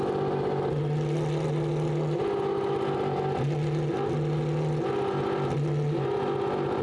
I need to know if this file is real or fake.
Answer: real